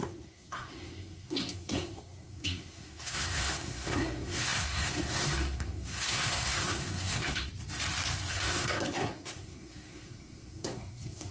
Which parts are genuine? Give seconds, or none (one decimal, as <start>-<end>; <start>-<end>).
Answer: 7.5-8.3